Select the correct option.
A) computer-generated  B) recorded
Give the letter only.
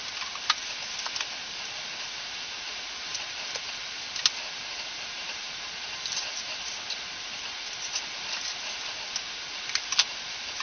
B